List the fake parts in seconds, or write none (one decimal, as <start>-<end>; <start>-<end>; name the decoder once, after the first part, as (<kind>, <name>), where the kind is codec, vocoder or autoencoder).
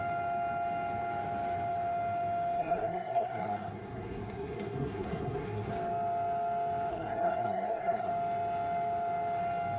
2.6-5.7 (codec, SNAC); 6.9-8.1